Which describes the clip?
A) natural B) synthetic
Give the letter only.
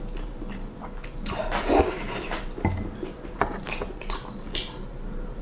A